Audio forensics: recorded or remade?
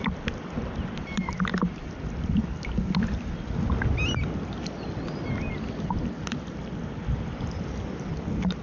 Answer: recorded